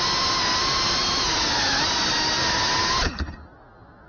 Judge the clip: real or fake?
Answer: real